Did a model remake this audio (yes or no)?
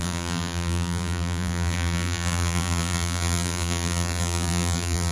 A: yes